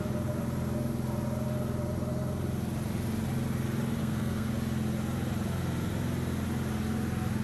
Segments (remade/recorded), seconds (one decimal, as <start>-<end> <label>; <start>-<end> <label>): 0.0-4.0 recorded; 4.0-4.5 remade; 4.5-7.4 recorded